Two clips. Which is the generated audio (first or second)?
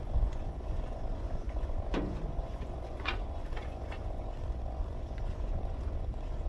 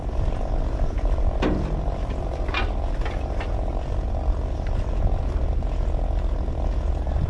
first